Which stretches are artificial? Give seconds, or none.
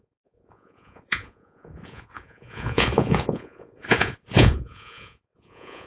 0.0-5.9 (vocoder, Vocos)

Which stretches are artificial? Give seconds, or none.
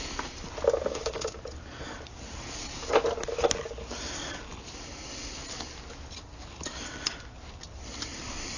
0.9-1.4 (codec, DAC)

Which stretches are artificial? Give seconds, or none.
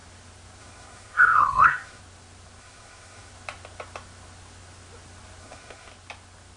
0.6-2.0 (codec, SNAC); 2.6-3.3; 5.4-5.9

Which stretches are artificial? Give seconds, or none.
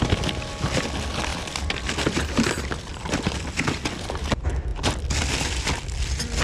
1.3-1.9 (vocoder, BigVGAN v2); 2.9-4.0; 4.7-6.4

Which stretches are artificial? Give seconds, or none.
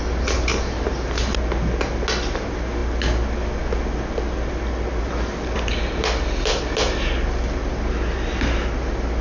none